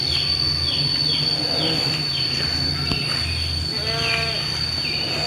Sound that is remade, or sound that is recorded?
recorded